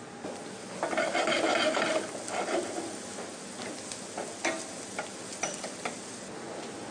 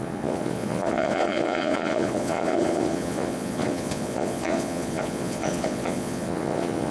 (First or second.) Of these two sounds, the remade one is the second